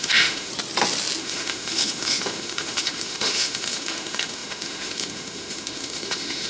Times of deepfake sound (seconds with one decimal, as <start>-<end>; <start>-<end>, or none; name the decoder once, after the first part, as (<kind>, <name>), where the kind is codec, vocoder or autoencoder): 0.0-0.5 (autoencoder, DAC-VAE); 1.2-6.5

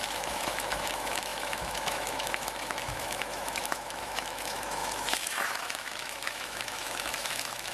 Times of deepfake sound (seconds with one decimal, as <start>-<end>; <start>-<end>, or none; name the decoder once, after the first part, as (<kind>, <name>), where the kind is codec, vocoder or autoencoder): 0.0-7.7 (autoencoder, DAC-VAE)

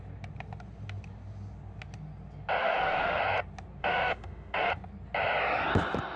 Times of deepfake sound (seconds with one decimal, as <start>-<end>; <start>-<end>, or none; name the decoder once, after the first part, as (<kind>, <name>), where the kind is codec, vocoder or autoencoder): 2.6-3.2 (autoencoder, DAC-VAE); 3.8-4.7